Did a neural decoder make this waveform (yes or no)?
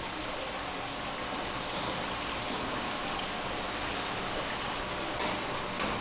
no